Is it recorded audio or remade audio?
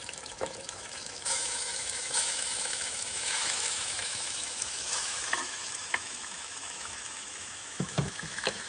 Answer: remade